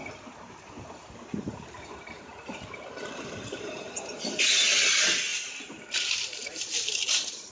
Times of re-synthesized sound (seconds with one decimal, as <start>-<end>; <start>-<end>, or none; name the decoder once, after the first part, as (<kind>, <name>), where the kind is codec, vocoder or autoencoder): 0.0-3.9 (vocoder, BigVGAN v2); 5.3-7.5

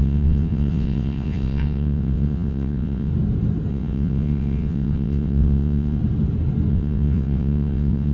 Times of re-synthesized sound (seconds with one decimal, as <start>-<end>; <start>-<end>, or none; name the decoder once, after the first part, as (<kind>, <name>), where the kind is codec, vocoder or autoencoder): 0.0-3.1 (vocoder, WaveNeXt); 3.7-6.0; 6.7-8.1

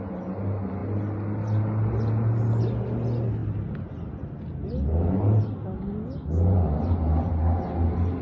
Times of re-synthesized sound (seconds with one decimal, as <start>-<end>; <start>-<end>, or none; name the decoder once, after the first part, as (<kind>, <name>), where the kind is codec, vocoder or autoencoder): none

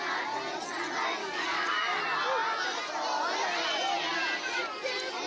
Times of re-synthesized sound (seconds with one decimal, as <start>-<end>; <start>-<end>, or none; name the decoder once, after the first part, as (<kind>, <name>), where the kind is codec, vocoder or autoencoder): 1.2-2.0 (codec, DAC)

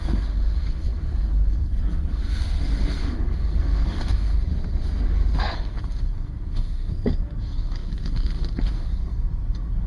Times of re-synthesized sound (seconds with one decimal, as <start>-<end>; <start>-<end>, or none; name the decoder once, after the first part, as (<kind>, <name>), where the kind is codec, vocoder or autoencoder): 0.0-4.5 (codec, SNAC); 5.4-9.9

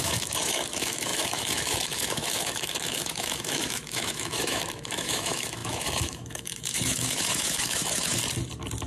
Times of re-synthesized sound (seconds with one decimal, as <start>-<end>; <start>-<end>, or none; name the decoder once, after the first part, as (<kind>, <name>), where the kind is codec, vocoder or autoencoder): 0.0-8.2 (autoencoder, DAC-VAE)